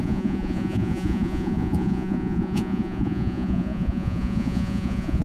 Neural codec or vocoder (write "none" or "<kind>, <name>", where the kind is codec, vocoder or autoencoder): vocoder, Vocos